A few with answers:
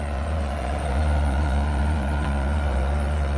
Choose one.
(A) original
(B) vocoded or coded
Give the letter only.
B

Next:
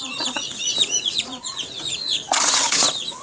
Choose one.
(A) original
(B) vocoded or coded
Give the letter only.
B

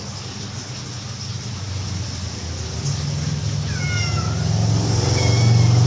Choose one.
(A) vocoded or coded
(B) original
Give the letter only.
B